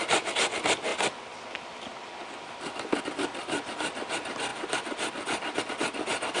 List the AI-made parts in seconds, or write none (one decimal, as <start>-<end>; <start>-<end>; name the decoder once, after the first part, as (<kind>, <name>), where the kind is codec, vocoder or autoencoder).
none